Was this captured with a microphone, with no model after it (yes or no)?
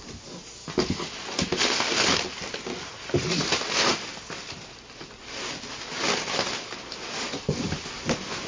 yes